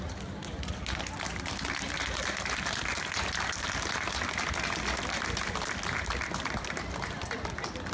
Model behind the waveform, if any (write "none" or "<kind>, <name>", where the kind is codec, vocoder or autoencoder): none